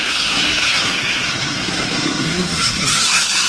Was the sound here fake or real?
fake